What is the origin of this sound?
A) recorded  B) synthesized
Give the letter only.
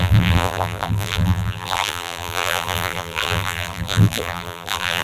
B